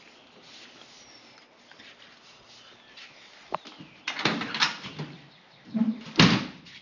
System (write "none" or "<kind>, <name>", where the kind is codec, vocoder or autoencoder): none